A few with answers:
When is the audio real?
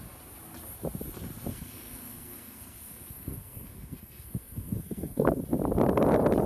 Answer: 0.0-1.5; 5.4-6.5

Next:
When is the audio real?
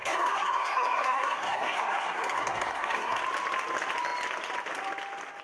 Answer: 3.2-5.4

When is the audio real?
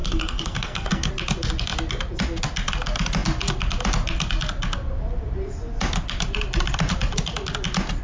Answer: 1.1-8.0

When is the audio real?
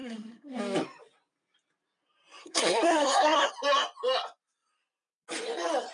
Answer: 0.6-2.4; 3.5-5.9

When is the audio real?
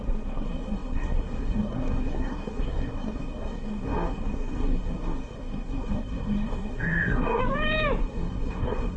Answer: 7.4-8.0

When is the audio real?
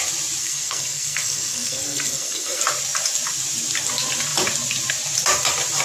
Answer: 0.0-0.4; 2.6-5.8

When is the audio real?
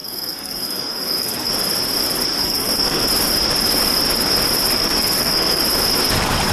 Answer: 1.5-2.4; 3.1-4.8; 5.6-6.5